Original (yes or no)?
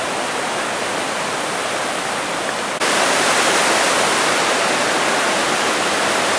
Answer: yes